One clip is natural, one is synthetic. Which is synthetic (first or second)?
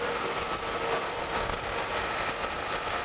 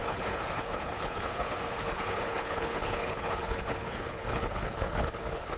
second